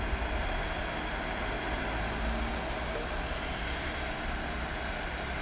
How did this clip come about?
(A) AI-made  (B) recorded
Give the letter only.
B